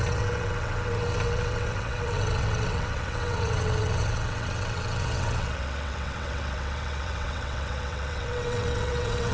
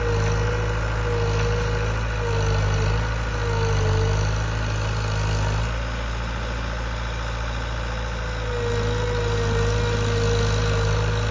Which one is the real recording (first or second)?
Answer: second